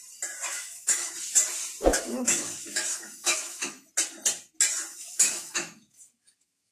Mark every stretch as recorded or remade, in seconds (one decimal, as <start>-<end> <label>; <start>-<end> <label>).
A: 0.0-0.5 recorded; 0.5-1.1 remade; 1.1-1.9 recorded; 1.9-3.9 remade; 3.9-4.9 recorded; 4.9-6.7 remade

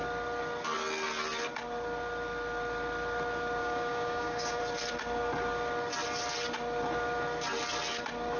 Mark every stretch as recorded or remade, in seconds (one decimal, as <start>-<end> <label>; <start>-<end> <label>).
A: 0.0-3.6 recorded; 3.6-4.6 remade; 4.6-8.4 recorded

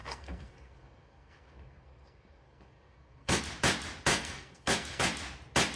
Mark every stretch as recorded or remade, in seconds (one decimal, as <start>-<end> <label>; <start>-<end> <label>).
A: 0.0-3.4 remade; 3.4-4.1 recorded; 4.1-5.1 remade; 5.1-5.8 recorded

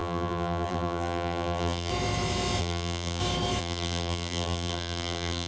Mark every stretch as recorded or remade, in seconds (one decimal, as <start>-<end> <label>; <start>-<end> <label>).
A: 0.0-1.9 remade; 1.9-2.6 recorded; 2.6-3.2 remade; 3.2-3.6 recorded; 3.6-5.5 remade

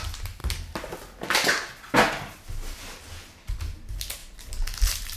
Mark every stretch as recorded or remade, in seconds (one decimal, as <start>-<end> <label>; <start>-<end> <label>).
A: 0.0-5.2 recorded

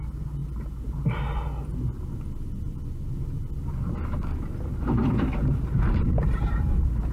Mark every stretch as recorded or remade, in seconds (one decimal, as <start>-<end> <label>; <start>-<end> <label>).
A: 0.0-7.1 recorded